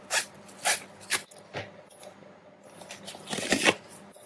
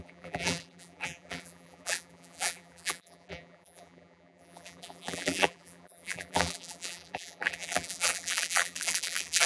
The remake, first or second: second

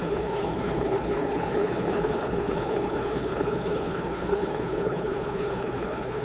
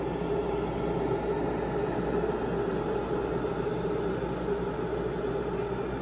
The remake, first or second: first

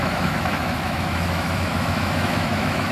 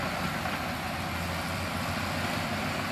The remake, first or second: first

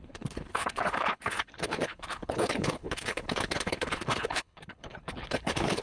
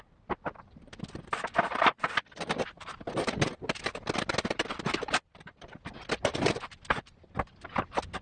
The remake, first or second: first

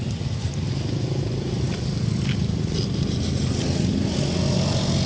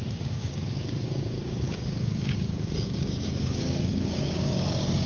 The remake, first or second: second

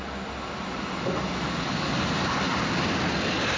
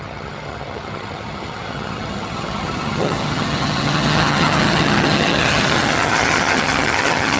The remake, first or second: second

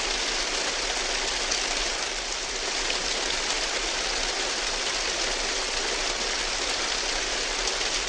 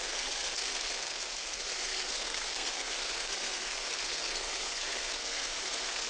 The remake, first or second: second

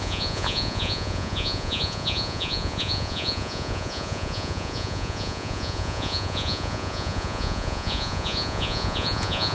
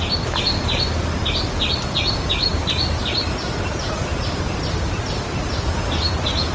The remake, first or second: first